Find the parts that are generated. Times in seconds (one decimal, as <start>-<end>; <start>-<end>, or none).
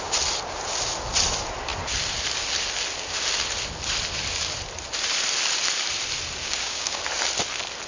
6.4-7.0